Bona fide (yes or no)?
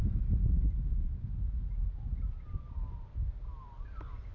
yes